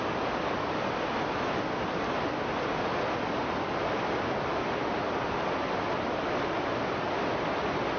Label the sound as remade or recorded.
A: recorded